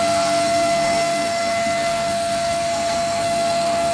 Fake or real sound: fake